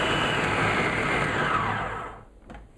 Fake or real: real